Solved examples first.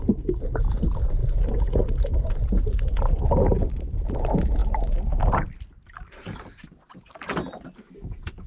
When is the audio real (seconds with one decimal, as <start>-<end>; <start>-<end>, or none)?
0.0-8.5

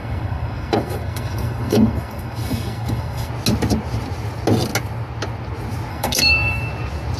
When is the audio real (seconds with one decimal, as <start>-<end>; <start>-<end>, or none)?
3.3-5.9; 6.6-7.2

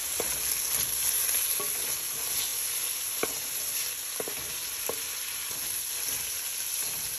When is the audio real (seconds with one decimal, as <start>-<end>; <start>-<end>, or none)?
0.0-7.2